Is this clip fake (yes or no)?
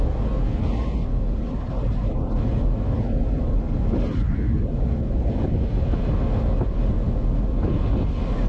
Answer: no